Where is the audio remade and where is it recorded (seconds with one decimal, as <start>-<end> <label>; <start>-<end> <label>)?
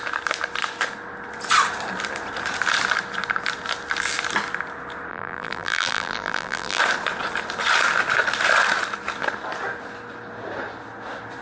0.0-5.1 recorded; 5.1-6.8 remade; 6.8-11.4 recorded